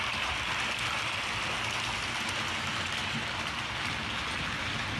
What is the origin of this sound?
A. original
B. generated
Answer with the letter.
A